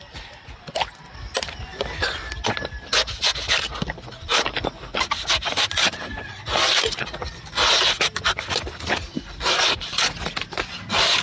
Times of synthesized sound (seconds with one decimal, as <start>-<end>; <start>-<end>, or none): none

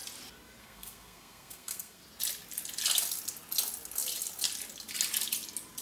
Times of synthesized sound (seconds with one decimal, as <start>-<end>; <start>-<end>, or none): 0.6-2.0

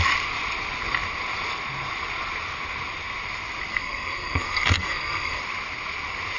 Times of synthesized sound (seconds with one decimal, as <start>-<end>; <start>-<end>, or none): 3.7-5.4

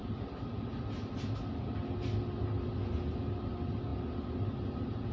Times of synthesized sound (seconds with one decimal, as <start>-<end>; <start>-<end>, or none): none